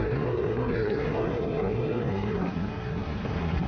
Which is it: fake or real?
fake